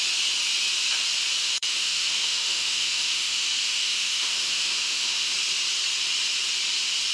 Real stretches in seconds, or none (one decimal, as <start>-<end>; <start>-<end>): 0.0-1.4; 5.3-7.1